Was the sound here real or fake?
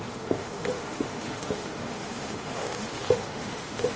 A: fake